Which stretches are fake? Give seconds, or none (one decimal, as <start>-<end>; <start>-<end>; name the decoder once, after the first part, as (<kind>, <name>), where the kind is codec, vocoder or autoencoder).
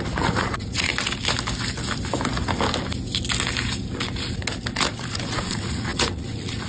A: 0.0-0.9 (vocoder, Vocos); 4.9-6.7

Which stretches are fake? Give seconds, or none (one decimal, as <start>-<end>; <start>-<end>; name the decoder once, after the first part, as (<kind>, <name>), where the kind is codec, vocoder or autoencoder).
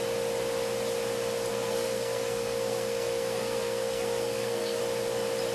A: 1.5-4.8 (codec, SNAC)